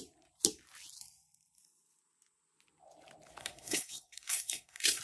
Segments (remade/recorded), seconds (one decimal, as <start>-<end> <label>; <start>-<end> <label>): 0.0-3.4 recorded; 3.4-5.0 remade